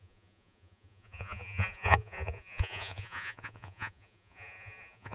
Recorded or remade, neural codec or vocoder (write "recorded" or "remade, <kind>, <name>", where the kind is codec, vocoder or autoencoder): remade, vocoder, Vocos